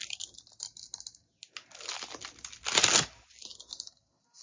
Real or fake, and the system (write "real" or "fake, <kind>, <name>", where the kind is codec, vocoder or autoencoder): real